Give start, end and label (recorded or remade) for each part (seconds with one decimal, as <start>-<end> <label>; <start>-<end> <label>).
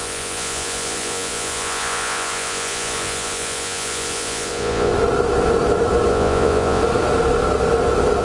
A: 0.0-4.9 remade; 4.9-6.1 recorded; 6.1-6.8 remade; 6.8-8.2 recorded